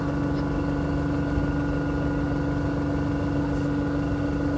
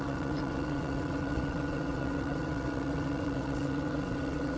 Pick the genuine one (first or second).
first